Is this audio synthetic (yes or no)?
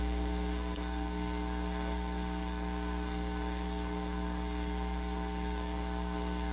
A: yes